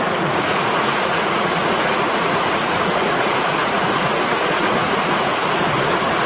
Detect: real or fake fake